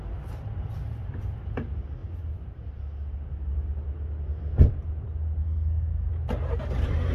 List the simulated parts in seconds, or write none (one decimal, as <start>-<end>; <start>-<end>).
5.4-6.1